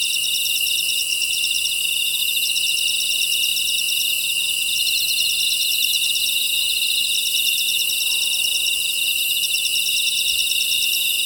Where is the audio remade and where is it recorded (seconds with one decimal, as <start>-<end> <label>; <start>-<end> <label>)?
0.0-11.3 recorded